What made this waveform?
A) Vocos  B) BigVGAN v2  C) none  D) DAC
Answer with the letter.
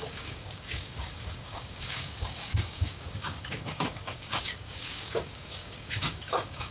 D